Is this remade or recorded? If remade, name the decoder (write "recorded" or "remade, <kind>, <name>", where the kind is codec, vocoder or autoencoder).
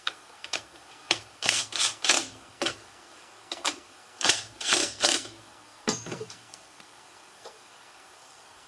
remade, codec, SNAC